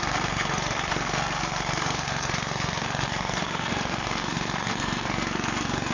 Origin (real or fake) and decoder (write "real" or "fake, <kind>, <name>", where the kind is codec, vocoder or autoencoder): fake, codec, SNAC